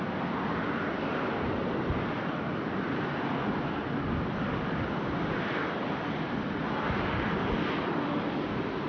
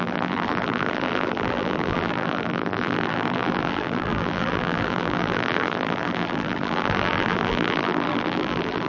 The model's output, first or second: second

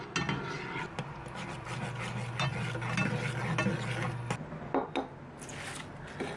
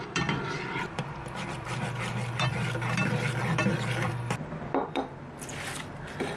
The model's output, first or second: second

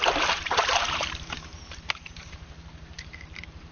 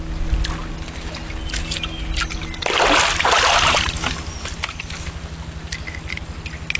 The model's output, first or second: first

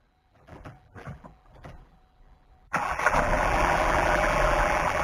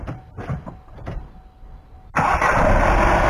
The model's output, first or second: first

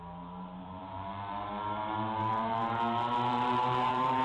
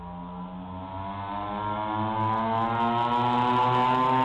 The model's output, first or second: first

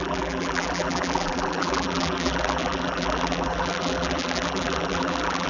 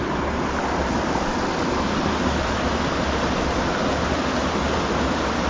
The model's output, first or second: first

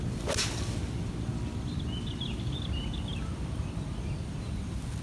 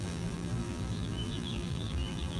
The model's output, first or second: second